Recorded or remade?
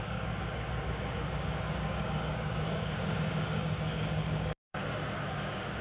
remade